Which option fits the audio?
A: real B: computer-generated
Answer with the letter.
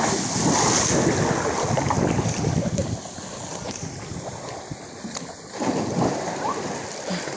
A